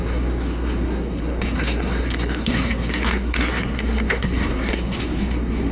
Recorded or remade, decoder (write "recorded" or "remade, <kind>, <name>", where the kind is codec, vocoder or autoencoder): remade, codec, SNAC